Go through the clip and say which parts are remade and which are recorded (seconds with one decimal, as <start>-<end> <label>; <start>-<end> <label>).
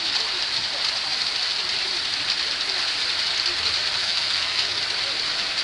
0.0-4.0 recorded; 4.0-4.8 remade; 4.8-5.6 recorded